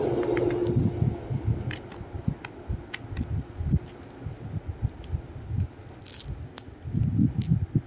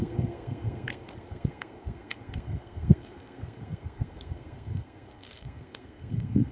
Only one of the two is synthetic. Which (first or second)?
second